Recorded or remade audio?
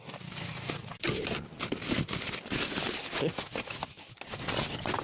recorded